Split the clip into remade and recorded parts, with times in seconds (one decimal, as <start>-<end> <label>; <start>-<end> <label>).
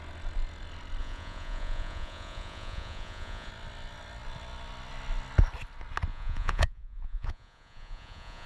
0.0-1.0 recorded; 1.0-3.5 remade; 3.5-6.1 recorded; 6.1-8.5 remade